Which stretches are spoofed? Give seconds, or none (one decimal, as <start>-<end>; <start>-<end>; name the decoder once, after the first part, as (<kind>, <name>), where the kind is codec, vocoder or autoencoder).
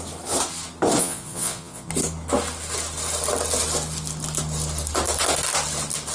1.0-1.9 (vocoder, Vocos)